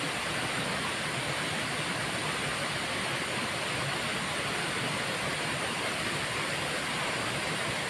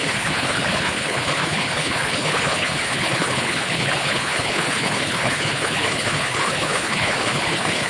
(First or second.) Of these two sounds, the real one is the first